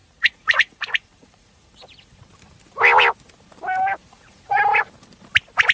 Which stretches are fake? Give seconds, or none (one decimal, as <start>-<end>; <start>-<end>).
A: 0.0-2.2; 4.0-4.6